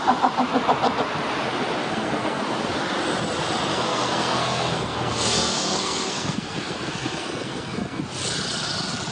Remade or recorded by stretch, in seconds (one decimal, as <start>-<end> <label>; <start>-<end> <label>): 0.0-1.8 recorded; 1.8-2.4 remade; 2.4-3.7 recorded; 3.7-8.0 remade; 8.0-9.1 recorded